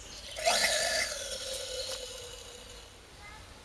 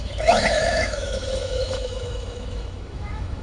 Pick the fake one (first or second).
second